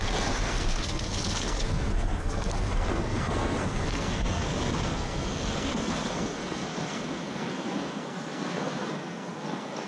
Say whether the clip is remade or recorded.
remade